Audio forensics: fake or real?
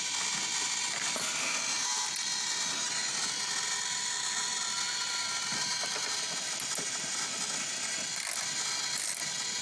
real